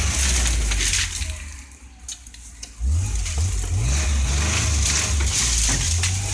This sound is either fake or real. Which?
real